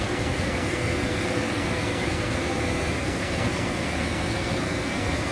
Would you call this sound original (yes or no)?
no